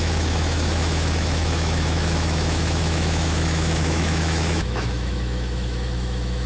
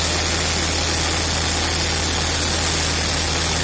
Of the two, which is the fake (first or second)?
first